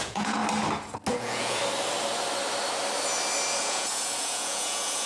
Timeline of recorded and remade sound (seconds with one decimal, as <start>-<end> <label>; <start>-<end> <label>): 0.0-0.4 remade; 0.4-1.1 recorded; 1.1-1.6 remade; 1.6-3.6 recorded; 3.6-5.1 remade